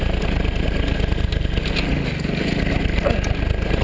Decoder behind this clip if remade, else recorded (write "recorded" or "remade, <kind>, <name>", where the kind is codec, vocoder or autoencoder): recorded